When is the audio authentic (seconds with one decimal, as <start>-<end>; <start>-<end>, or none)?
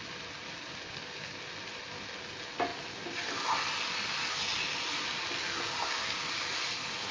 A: 0.0-7.1